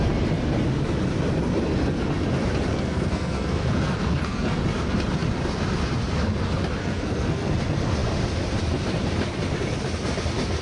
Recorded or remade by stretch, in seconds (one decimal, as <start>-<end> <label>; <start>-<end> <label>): 0.0-2.7 recorded; 2.7-4.6 remade; 4.6-6.8 recorded; 6.8-7.5 remade; 7.5-10.6 recorded